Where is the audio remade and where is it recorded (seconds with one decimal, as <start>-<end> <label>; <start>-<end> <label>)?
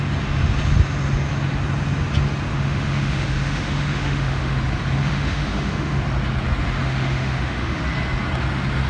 0.0-2.5 recorded; 2.5-4.5 remade; 4.5-5.0 recorded; 5.0-6.0 remade; 6.0-6.8 recorded; 6.8-7.8 remade; 7.8-8.9 recorded